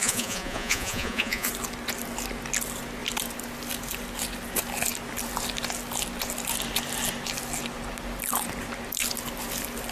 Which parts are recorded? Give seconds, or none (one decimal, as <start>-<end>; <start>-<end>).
1.5-9.9